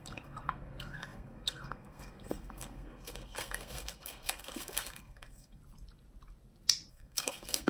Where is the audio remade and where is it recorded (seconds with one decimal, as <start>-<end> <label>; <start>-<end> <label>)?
0.0-5.6 remade; 5.6-6.9 recorded; 6.9-7.7 remade